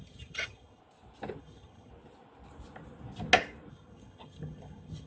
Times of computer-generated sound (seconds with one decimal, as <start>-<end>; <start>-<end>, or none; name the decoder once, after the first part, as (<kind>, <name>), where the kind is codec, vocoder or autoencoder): 0.0-0.8 (vocoder, HiFi-GAN); 1.4-1.9; 3.7-5.1